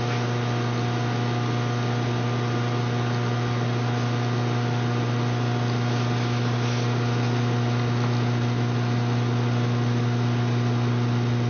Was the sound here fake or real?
real